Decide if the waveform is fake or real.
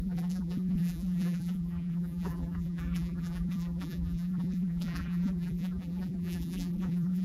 fake